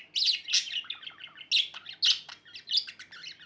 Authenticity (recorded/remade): recorded